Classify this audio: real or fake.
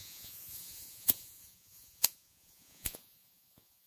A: fake